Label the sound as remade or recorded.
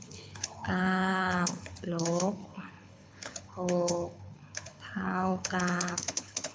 remade